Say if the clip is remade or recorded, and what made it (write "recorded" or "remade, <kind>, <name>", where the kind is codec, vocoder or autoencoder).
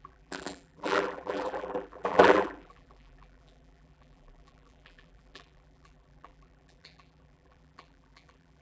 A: remade, vocoder, BigVGAN v2